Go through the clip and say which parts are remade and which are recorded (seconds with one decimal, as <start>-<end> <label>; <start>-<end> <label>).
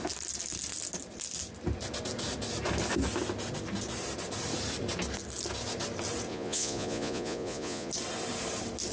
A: 0.0-6.3 recorded; 6.3-7.9 remade; 7.9-8.9 recorded